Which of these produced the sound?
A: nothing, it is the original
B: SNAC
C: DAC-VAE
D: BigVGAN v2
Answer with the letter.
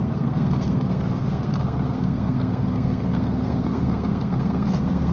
B